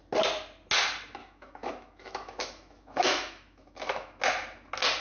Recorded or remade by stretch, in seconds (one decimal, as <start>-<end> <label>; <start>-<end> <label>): 0.0-1.2 recorded; 1.2-4.2 remade; 4.2-5.0 recorded

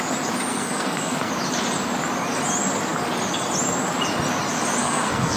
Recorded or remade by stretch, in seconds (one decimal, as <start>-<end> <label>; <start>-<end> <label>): 0.0-0.5 recorded; 0.5-1.3 remade; 1.3-4.8 recorded; 4.8-5.4 remade

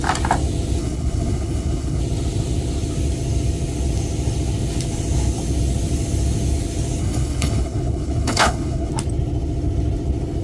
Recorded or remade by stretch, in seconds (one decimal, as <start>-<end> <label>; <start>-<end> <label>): 0.0-0.8 recorded; 0.8-2.0 remade; 2.0-7.0 recorded; 7.0-8.9 remade; 8.9-10.4 recorded

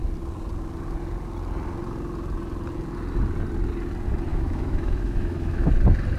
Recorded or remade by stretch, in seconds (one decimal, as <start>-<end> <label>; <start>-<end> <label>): 0.0-4.3 recorded; 4.3-5.7 remade; 5.7-6.2 recorded

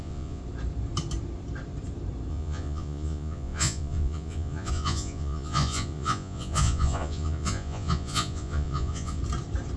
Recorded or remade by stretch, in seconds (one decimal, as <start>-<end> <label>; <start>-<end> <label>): 0.0-0.4 remade; 0.4-2.3 recorded; 2.3-9.2 remade; 9.2-9.8 recorded

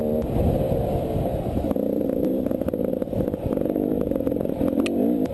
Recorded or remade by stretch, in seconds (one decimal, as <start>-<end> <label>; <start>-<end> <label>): 0.0-1.3 recorded; 1.3-4.5 remade; 4.5-5.3 recorded

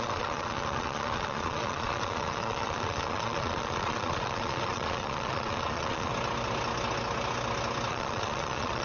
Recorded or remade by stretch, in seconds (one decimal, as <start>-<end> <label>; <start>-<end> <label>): 0.0-6.1 remade; 6.1-7.9 recorded; 7.9-8.8 remade

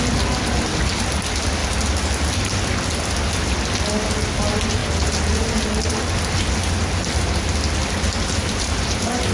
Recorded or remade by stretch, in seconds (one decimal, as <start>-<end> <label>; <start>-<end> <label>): 0.0-9.3 recorded